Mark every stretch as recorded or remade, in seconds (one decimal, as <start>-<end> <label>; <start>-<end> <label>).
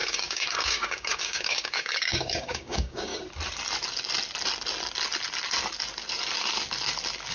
0.0-3.1 remade; 3.1-7.3 recorded